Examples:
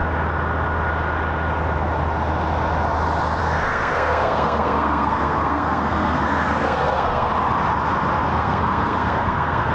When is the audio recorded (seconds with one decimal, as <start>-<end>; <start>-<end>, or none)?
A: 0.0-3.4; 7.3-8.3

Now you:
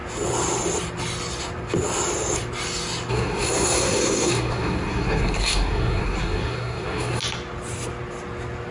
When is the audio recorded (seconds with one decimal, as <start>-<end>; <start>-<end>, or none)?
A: 0.0-3.1; 7.2-8.7

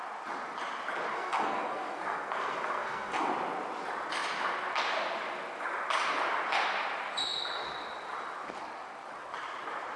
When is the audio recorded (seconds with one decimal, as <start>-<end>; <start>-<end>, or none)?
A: 0.0-1.1; 3.3-10.0

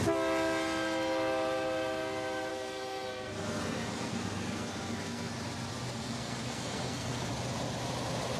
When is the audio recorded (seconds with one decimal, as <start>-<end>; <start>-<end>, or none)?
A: 0.0-2.5; 5.3-6.0; 7.3-8.4